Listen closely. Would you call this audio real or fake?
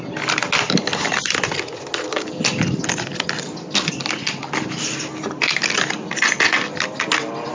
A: real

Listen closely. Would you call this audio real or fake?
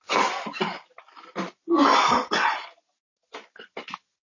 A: real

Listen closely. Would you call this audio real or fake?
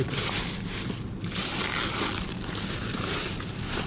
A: real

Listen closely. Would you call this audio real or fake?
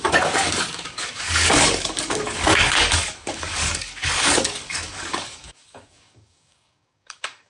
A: fake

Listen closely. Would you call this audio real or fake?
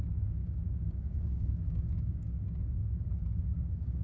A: fake